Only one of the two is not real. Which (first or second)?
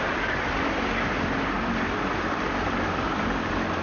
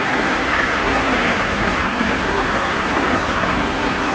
second